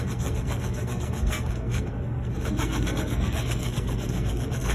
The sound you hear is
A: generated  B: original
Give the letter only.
A